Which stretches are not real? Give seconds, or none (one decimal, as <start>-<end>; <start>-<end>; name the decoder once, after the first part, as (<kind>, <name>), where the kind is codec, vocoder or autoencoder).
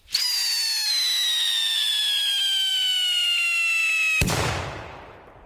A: 1.4-1.9 (vocoder, Vocos)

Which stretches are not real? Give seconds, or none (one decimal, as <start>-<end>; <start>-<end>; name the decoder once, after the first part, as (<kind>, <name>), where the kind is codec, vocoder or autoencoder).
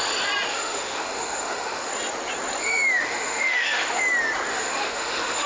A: 0.5-1.9 (autoencoder, DAC-VAE); 2.6-4.0; 4.5-5.5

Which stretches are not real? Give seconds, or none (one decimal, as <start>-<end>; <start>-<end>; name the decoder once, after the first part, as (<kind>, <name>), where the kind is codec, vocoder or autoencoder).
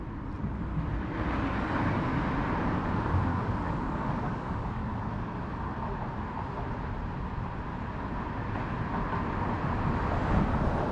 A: 3.3-5.1 (codec, DAC)